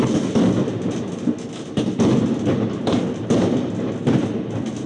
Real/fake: real